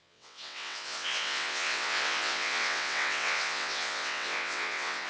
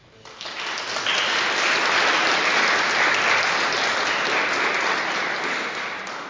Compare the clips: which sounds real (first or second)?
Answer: second